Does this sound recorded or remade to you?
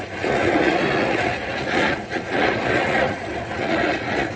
remade